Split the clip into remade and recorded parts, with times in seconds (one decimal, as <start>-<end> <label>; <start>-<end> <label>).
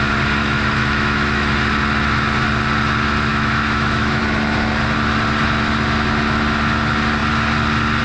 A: 0.0-0.4 recorded; 0.4-1.5 remade; 1.5-3.3 recorded; 3.3-4.2 remade; 4.2-8.0 recorded